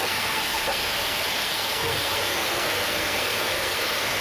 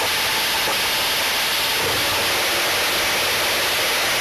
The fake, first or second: first